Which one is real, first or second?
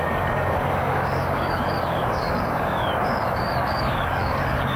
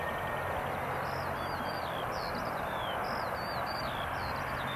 second